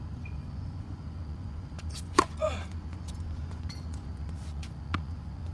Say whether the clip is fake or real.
fake